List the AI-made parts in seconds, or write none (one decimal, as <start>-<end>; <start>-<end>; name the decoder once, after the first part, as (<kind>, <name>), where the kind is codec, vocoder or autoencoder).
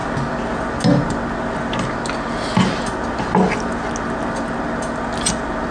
none